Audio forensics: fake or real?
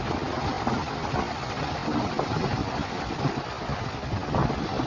real